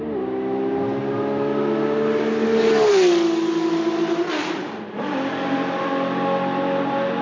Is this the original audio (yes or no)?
yes